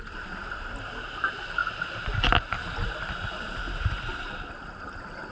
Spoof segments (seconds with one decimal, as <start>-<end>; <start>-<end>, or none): none